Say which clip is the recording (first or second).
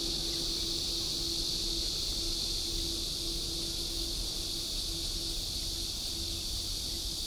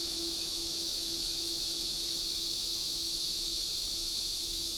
first